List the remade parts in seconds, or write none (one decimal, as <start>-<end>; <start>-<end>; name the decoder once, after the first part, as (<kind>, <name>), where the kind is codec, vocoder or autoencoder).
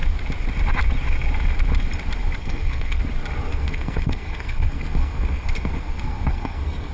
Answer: 2.4-3.0 (codec, SNAC); 3.5-6.9